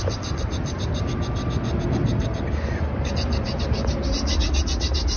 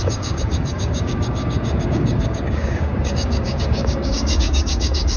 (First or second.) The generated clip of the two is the second